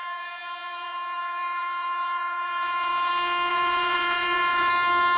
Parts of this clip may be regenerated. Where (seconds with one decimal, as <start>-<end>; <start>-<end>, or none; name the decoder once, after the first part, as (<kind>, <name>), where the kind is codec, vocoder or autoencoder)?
0.0-3.1 (vocoder, Vocos); 3.5-4.7